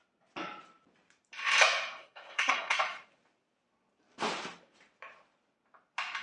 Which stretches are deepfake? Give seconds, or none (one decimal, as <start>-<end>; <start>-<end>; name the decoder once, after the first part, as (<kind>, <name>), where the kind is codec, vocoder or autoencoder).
2.0-2.8 (codec, SNAC)